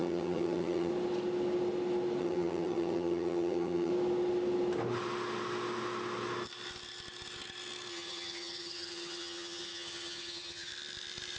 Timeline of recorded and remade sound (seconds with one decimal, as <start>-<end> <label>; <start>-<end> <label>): 0.0-0.9 remade; 0.9-2.2 recorded; 2.2-3.9 remade; 3.9-7.9 recorded; 7.9-10.7 remade; 10.7-11.4 recorded